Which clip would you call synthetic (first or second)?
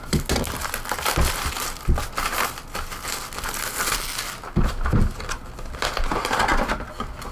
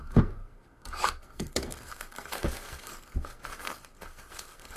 second